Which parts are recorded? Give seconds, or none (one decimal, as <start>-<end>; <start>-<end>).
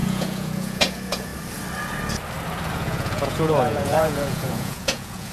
1.3-2.7